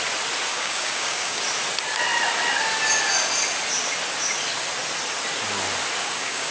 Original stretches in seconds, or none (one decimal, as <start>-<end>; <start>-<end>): 0.0-0.5; 1.4-6.0